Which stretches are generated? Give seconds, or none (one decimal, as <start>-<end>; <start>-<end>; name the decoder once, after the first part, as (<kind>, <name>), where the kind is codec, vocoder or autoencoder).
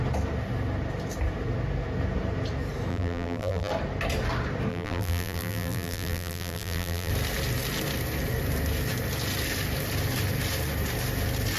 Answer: 2.9-3.7 (vocoder, BigVGAN v2); 4.7-7.1